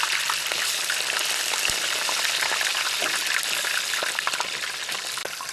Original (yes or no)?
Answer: yes